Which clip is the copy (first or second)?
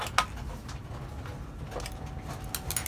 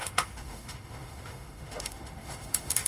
second